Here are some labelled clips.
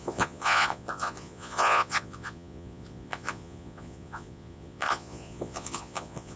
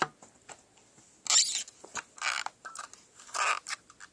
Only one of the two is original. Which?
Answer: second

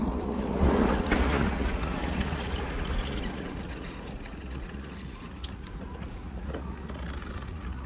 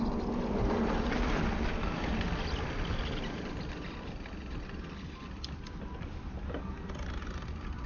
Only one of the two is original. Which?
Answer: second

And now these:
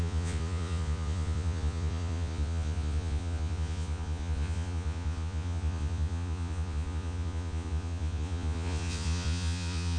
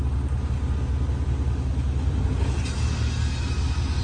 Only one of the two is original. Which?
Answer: second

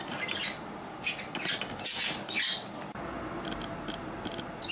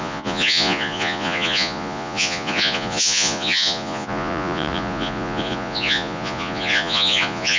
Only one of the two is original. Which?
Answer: first